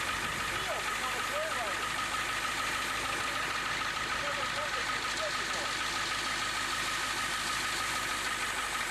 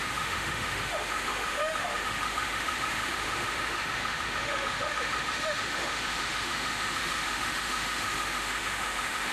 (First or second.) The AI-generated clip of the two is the second